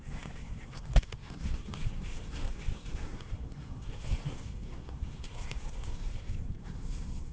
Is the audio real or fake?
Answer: fake